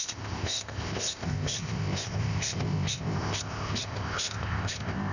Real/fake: fake